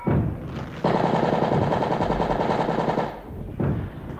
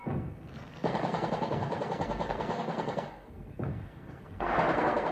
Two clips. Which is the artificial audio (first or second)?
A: second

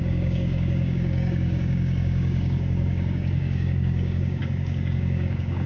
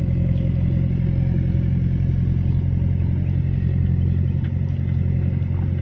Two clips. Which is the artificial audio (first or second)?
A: first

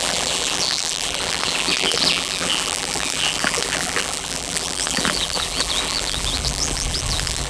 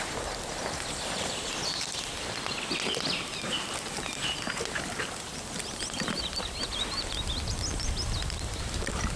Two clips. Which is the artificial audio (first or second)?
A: first